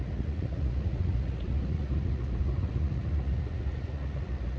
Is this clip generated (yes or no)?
yes